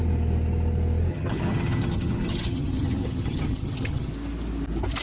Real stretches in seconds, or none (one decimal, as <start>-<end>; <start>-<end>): 0.0-1.1; 4.1-5.0

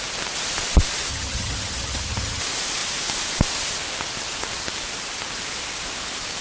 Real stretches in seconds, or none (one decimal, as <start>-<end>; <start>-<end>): 0.0-1.1; 2.4-6.4

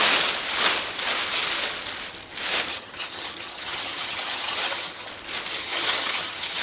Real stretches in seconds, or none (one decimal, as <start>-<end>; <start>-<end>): 0.0-2.7; 5.1-5.6

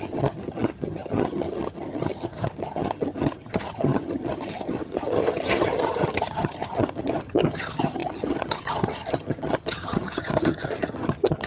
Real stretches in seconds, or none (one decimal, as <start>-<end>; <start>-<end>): none

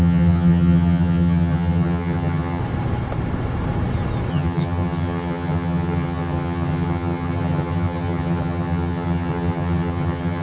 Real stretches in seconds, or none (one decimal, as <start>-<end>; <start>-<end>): 2.6-4.3